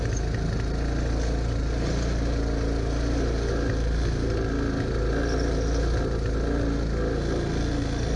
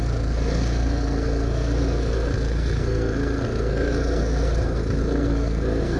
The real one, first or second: first